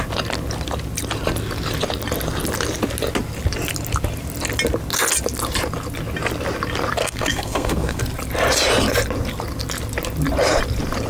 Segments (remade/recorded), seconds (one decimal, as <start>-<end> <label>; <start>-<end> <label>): 0.0-7.0 recorded; 7.0-8.0 remade; 8.0-11.1 recorded